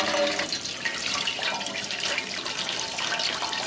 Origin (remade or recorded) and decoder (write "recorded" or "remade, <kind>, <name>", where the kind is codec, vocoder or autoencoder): recorded